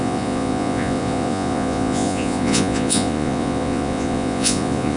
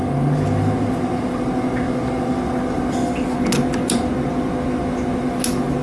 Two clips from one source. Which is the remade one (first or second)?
first